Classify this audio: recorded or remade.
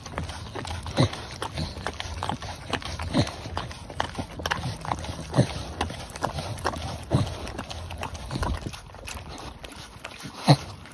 recorded